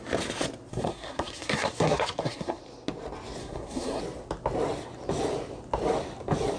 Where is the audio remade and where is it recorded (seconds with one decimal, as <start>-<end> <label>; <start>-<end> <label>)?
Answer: 0.0-0.7 recorded; 0.7-2.6 remade; 2.6-3.4 recorded; 3.4-4.0 remade; 4.0-6.6 recorded